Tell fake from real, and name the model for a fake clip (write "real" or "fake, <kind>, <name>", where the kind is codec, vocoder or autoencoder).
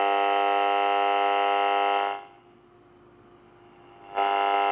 real